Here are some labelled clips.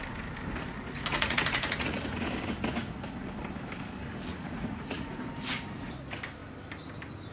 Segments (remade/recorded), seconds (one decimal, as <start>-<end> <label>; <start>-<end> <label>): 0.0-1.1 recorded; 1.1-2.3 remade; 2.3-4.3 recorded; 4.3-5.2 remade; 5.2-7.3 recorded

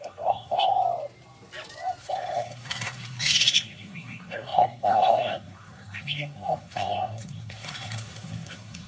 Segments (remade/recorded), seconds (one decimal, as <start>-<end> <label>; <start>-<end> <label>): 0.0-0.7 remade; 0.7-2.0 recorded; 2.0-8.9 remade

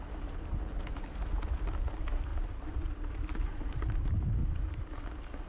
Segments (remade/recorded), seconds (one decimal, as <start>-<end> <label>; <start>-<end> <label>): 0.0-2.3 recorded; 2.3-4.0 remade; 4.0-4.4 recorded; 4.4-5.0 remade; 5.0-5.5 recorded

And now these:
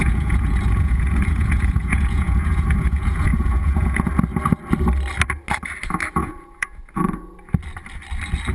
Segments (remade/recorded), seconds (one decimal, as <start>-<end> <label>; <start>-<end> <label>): 0.0-4.1 remade; 4.1-6.2 recorded; 6.2-7.0 remade; 7.0-8.5 recorded

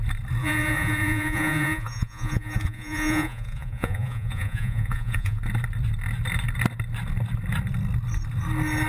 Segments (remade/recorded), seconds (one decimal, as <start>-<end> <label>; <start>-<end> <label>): 0.0-0.4 recorded; 0.4-5.4 remade; 5.4-8.9 recorded

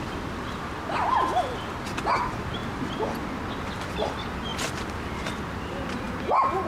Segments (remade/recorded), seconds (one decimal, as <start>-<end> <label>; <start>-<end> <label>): 0.0-6.7 recorded